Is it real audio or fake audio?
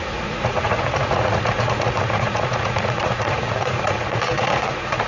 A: fake